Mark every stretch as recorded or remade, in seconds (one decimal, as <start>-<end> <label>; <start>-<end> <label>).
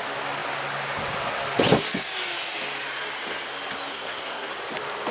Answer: 0.0-3.9 recorded; 3.9-4.5 remade; 4.5-5.1 recorded